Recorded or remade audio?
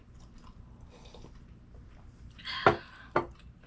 recorded